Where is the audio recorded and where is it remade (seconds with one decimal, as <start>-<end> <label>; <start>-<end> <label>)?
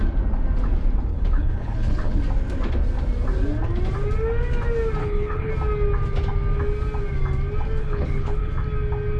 0.0-1.1 recorded; 1.1-2.2 remade; 2.2-5.0 recorded; 5.0-5.5 remade; 5.5-7.8 recorded; 7.8-8.5 remade; 8.5-9.2 recorded